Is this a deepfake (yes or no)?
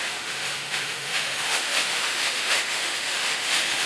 yes